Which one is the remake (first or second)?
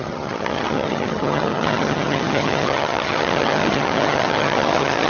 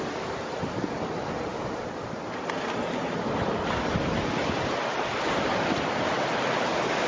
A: first